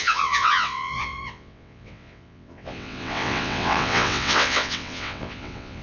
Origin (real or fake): fake